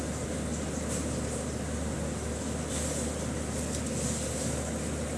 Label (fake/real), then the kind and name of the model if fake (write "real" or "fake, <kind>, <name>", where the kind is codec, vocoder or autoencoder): real